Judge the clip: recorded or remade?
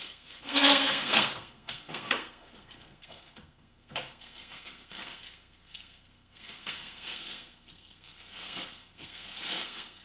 remade